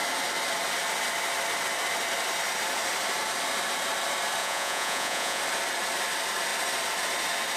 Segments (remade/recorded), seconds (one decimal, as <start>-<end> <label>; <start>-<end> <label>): 0.0-4.4 recorded; 4.4-5.4 remade; 5.4-7.6 recorded